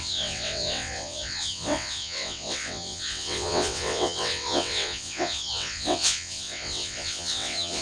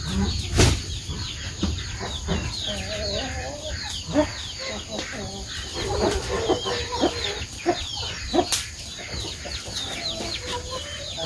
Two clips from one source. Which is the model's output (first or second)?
first